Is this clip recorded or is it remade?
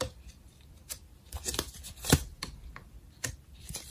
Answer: remade